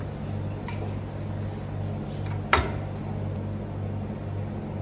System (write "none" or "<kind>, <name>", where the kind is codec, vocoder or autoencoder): none